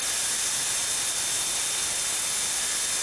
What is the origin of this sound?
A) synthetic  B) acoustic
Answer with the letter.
B